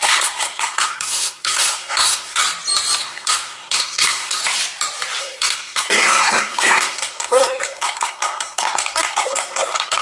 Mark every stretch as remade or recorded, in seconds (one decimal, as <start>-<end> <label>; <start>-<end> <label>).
0.0-2.4 remade; 2.4-3.0 recorded; 3.0-4.4 remade; 4.4-5.2 recorded; 5.2-10.0 remade